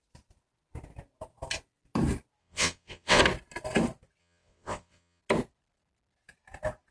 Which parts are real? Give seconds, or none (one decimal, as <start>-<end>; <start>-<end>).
0.0-2.4; 3.2-4.2; 5.2-6.9